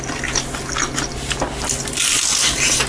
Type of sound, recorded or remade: recorded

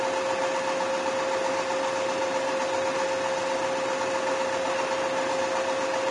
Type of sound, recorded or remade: recorded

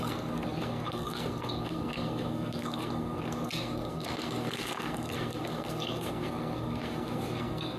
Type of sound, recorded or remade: remade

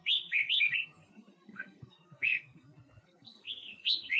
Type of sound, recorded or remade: remade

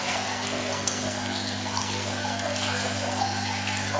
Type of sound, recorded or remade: remade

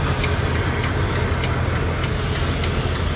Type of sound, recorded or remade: recorded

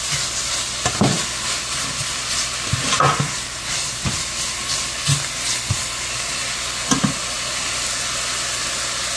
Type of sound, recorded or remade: recorded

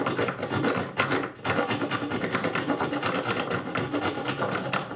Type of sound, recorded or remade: recorded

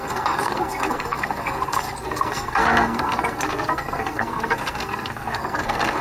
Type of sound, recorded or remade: remade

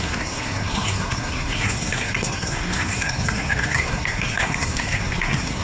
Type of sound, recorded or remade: remade